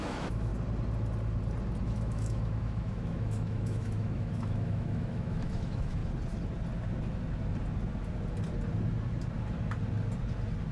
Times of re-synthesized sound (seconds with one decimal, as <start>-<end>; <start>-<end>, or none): 0.0-0.5; 1.8-6.0